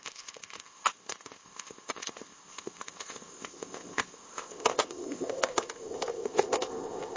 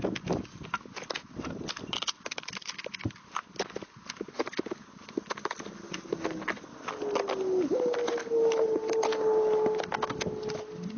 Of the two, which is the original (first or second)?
second